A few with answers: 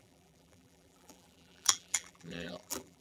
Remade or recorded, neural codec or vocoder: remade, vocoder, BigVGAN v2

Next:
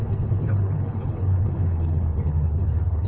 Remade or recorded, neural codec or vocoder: remade, codec, HILCodec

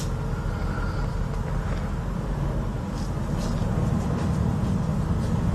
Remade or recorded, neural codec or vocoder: recorded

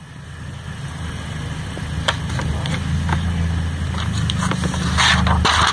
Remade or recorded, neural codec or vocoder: recorded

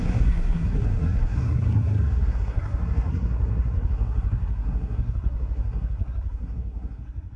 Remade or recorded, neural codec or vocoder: remade, codec, SNAC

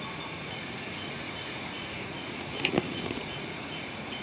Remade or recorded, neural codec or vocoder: remade, vocoder, Vocos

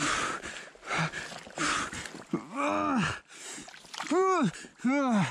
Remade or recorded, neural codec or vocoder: recorded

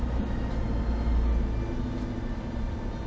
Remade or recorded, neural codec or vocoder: recorded